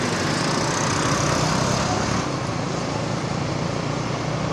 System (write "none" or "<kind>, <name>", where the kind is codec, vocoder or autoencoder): none